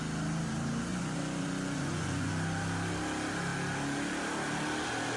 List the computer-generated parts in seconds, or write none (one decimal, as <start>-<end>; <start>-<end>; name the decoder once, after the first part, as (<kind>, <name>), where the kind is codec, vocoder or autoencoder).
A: 0.9-2.3 (vocoder, Vocos)